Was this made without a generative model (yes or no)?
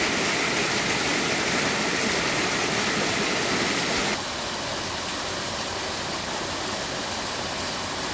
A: yes